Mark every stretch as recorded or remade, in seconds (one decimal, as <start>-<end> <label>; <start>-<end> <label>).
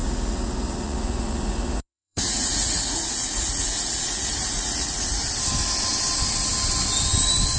0.0-5.2 remade; 5.2-7.6 recorded